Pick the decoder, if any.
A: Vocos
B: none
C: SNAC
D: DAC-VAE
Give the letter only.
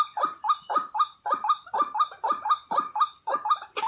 B